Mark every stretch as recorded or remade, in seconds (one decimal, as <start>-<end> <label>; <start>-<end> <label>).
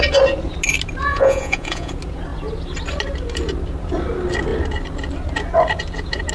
0.0-1.1 recorded; 1.1-1.9 remade; 1.9-6.3 recorded